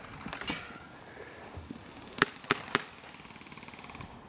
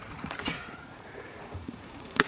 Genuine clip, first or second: first